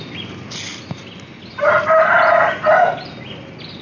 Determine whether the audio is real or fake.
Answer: real